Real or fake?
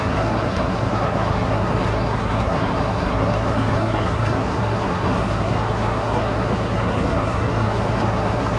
fake